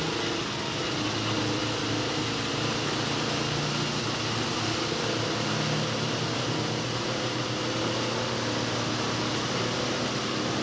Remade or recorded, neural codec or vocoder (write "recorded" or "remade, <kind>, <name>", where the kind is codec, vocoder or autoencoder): recorded